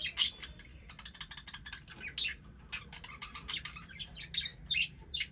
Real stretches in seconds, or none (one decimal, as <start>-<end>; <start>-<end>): 0.0-3.2; 4.1-4.5